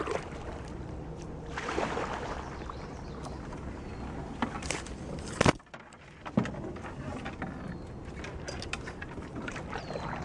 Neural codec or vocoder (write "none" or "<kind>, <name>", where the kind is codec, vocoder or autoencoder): none